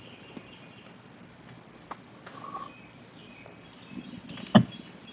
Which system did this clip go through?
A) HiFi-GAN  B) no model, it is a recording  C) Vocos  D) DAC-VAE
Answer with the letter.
B